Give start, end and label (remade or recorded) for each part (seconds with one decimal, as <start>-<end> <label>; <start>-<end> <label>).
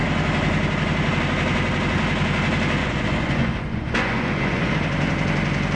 0.0-2.8 recorded; 2.8-4.7 remade; 4.7-5.8 recorded